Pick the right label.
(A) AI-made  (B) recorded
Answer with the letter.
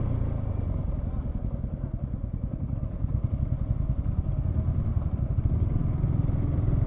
B